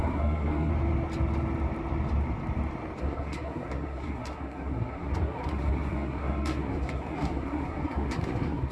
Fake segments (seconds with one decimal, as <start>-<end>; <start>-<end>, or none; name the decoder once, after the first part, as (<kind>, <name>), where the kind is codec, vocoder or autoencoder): 0.0-0.7 (codec, SNAC); 3.0-8.7